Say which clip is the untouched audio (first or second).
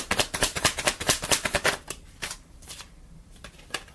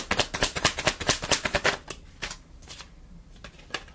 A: second